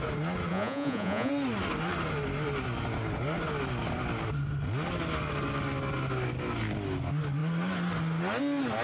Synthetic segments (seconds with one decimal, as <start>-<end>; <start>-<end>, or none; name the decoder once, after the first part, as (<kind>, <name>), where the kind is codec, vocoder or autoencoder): 0.5-1.3 (vocoder, Vocos)

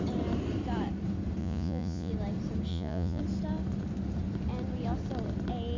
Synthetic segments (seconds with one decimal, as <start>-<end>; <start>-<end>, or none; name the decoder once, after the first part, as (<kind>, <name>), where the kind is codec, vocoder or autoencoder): 1.4-2.1 (vocoder, Vocos); 2.7-3.2

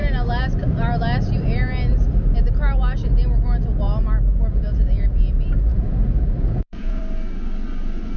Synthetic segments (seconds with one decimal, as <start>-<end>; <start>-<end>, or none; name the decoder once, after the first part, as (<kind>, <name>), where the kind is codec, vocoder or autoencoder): 4.5-5.2 (vocoder, Vocos); 5.7-7.0

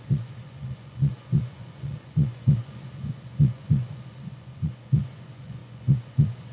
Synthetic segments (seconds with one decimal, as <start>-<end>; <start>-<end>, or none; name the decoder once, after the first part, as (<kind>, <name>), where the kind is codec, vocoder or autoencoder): 0.0-6.5 (vocoder, Vocos)

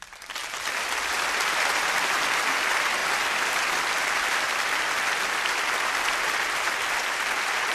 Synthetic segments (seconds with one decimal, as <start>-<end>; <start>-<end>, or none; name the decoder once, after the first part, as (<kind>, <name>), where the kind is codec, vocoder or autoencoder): none

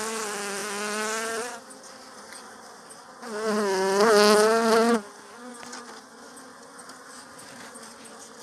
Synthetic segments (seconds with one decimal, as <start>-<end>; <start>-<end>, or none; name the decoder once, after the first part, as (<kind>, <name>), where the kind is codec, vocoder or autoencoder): none

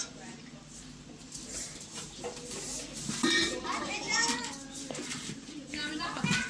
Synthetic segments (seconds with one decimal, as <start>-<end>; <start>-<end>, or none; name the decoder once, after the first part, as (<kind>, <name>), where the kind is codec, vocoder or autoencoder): none